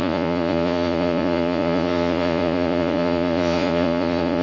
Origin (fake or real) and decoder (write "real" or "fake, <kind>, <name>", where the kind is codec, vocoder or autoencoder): fake, vocoder, Vocos